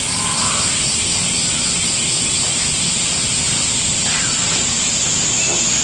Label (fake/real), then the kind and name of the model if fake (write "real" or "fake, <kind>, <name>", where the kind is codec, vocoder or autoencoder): real